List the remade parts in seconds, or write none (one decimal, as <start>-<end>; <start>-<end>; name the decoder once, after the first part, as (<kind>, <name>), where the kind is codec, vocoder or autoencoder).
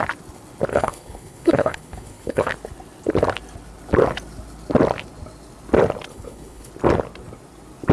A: 0.7-2.5 (codec, HILCodec); 6.1-6.7